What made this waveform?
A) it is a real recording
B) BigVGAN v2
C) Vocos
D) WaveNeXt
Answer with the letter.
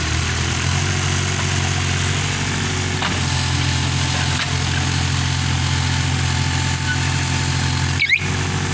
A